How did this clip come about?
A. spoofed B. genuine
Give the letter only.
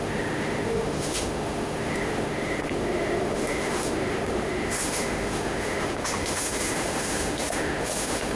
A